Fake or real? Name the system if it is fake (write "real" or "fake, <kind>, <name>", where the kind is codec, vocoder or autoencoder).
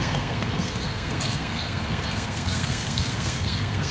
fake, codec, SNAC